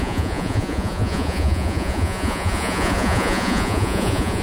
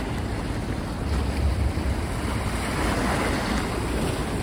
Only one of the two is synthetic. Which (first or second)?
first